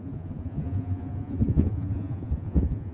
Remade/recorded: remade